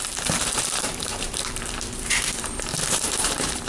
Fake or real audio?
fake